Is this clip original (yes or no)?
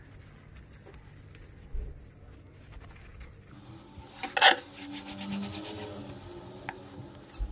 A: yes